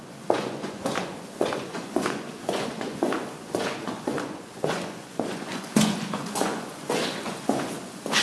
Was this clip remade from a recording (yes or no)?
yes